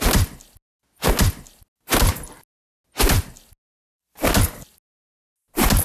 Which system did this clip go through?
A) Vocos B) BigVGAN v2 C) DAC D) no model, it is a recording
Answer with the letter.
D